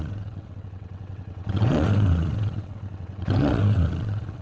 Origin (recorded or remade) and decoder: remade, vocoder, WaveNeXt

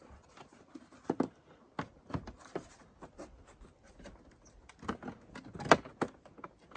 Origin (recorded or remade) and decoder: recorded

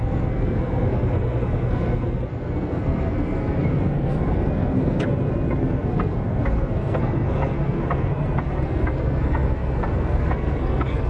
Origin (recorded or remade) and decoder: remade, codec, SNAC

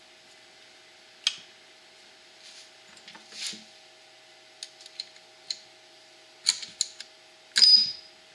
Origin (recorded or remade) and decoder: recorded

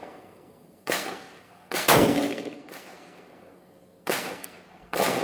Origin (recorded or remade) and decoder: remade, codec, SNAC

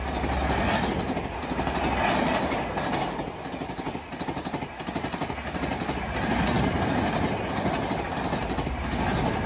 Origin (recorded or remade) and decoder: recorded